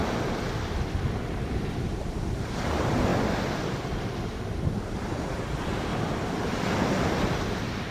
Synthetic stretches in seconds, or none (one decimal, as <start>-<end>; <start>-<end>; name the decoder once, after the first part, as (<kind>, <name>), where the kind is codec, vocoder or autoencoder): 1.3-3.1 (vocoder, BigVGAN v2); 4.8-5.9; 6.5-7.9